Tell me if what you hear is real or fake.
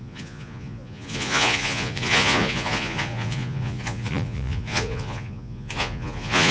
fake